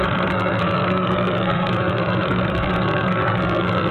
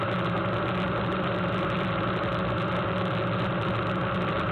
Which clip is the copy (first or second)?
first